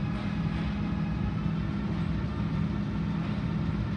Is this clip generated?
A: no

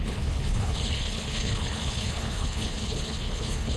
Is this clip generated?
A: yes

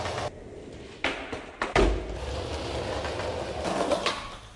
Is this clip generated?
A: no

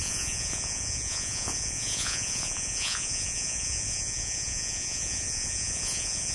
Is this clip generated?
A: yes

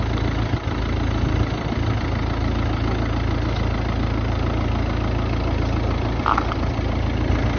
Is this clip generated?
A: no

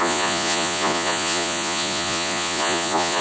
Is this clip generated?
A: yes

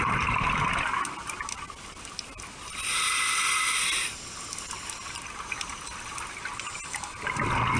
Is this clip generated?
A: no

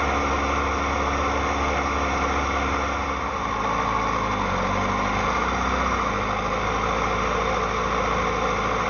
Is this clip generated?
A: no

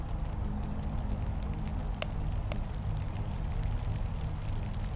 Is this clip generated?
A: no